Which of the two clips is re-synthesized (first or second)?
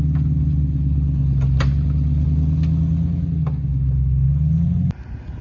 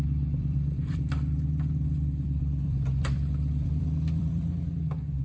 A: second